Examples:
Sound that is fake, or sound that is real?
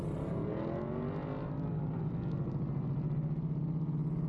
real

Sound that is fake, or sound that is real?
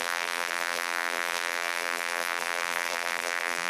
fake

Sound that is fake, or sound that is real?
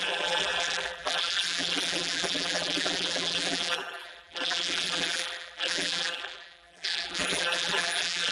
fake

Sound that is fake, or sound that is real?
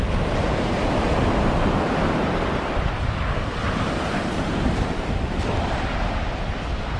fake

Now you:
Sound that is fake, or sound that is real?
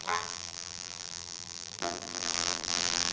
fake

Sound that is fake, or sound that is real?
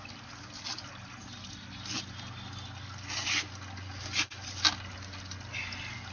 real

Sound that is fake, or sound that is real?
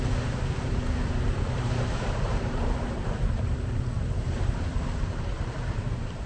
fake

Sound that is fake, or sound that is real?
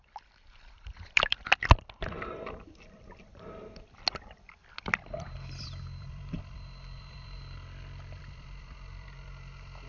fake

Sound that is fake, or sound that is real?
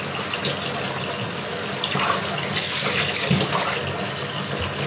real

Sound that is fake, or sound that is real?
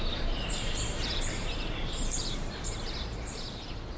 fake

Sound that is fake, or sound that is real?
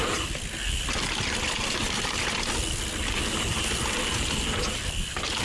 real